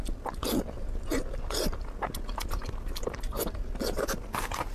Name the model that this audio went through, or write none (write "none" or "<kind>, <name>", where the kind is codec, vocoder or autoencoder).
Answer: none